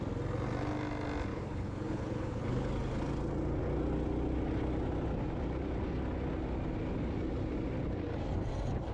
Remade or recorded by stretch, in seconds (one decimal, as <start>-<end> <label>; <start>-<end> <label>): 0.0-1.3 recorded; 1.3-2.7 remade; 2.7-8.9 recorded